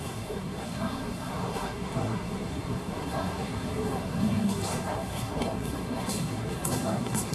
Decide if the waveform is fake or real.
fake